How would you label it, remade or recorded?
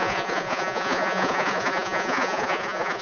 remade